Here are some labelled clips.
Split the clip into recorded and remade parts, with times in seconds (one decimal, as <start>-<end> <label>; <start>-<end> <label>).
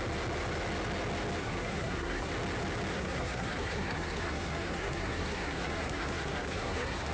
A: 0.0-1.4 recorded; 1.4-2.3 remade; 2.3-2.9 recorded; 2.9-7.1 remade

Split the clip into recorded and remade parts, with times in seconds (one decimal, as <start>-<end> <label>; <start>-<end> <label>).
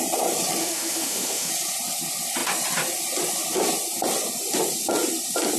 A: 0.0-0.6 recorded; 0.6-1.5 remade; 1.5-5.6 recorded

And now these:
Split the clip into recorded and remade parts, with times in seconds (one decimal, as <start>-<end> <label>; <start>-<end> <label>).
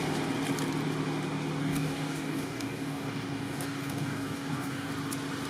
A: 0.0-1.6 recorded; 1.6-4.9 remade; 4.9-5.5 recorded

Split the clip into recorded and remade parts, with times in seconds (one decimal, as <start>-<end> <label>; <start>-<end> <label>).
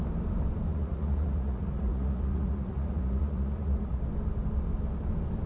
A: 0.0-0.7 recorded; 0.7-4.0 remade; 4.0-5.5 recorded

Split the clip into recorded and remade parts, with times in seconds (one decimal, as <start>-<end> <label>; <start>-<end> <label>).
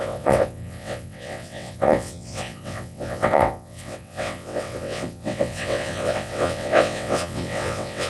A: 0.0-8.1 remade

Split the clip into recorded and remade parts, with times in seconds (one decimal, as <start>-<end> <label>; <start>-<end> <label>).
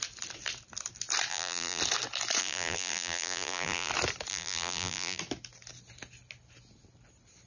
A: 0.0-1.3 recorded; 1.3-1.8 remade; 1.8-2.4 recorded; 2.4-3.9 remade; 3.9-4.3 recorded; 4.3-5.2 remade; 5.2-7.5 recorded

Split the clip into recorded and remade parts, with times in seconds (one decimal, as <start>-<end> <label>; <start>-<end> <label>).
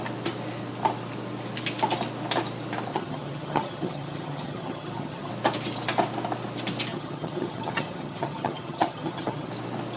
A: 0.0-2.9 recorded; 2.9-5.3 remade; 5.3-6.9 recorded; 6.9-9.5 remade; 9.5-10.0 recorded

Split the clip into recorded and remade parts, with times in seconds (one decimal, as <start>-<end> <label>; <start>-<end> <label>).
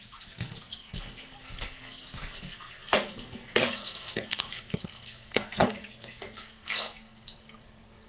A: 0.0-8.1 remade